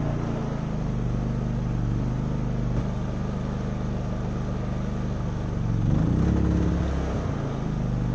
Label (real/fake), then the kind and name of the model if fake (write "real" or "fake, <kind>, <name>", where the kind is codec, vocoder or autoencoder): real